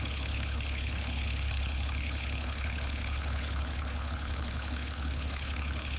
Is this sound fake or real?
fake